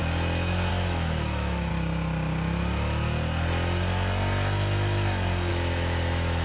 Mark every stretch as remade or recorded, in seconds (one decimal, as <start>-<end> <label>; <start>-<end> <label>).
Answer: 0.0-0.7 recorded; 0.7-1.7 remade; 1.7-5.5 recorded; 5.5-6.4 remade